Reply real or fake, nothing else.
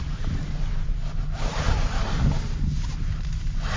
real